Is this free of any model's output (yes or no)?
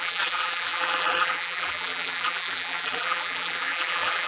no